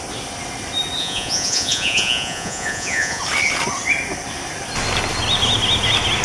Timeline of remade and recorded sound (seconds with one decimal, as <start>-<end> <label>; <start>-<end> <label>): 0.0-1.0 recorded; 1.0-3.2 remade; 3.2-6.2 recorded

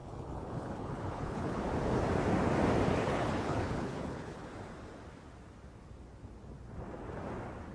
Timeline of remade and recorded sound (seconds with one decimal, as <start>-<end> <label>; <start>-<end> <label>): 0.0-1.6 remade; 1.6-3.0 recorded; 3.0-4.5 remade; 4.5-7.7 recorded

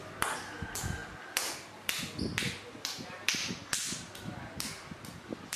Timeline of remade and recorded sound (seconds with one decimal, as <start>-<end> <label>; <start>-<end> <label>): 0.0-5.6 recorded

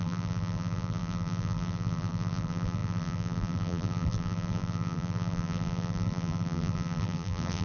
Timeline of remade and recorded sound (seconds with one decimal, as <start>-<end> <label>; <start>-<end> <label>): 0.0-7.6 remade

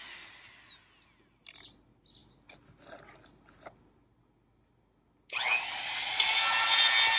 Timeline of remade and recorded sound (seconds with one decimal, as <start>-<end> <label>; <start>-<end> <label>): 0.0-7.2 recorded

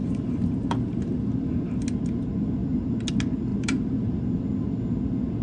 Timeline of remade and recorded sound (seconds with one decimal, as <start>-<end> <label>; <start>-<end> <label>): 0.0-1.4 remade; 1.4-3.5 recorded; 3.5-4.2 remade; 4.2-5.4 recorded

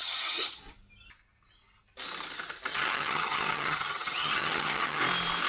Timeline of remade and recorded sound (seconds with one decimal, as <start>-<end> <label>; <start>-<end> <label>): 0.0-0.6 remade; 0.6-2.7 recorded; 2.7-5.0 remade; 5.0-5.5 recorded